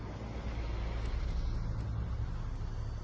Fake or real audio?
real